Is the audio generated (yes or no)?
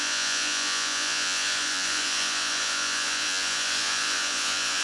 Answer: yes